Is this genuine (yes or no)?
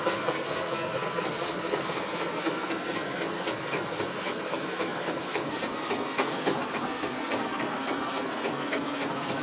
no